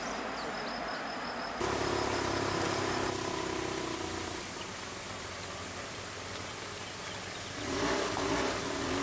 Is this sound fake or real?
real